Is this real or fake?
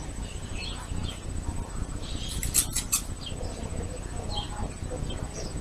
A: real